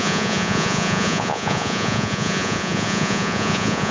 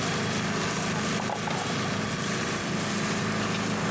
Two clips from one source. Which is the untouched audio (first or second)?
second